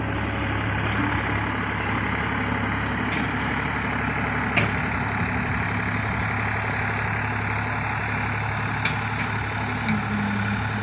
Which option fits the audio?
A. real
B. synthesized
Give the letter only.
A